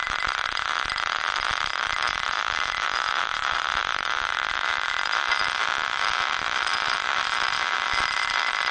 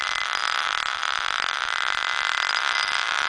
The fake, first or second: first